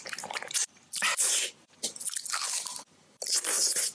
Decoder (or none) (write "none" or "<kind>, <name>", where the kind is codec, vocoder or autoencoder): none